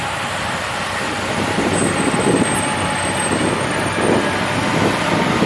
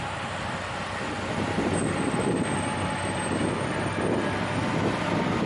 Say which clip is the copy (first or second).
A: first